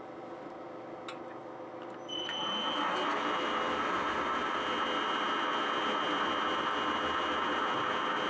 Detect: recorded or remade recorded